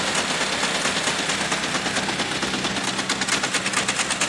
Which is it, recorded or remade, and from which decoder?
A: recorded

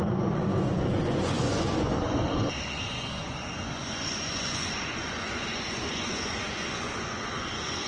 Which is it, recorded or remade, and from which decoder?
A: remade, vocoder, Vocos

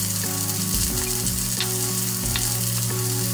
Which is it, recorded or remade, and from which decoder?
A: recorded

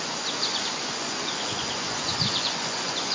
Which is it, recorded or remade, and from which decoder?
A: remade, vocoder, Vocos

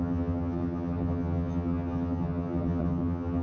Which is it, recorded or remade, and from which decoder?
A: remade, vocoder, HiFi-GAN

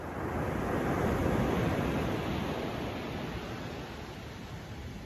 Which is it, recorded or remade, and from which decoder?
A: recorded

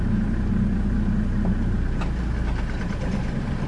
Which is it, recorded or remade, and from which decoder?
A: recorded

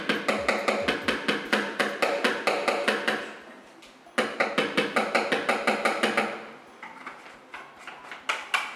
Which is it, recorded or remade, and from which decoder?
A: recorded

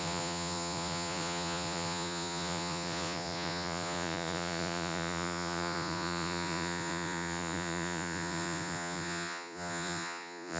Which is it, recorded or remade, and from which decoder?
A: remade, vocoder, Vocos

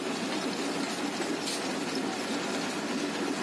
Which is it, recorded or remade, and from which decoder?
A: recorded